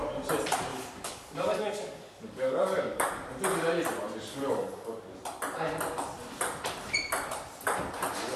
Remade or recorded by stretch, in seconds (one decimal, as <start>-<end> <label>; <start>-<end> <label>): 0.0-0.7 recorded; 0.7-3.1 remade; 3.1-4.3 recorded; 4.3-5.1 remade; 5.1-8.4 recorded